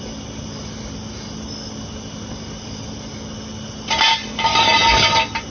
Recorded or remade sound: recorded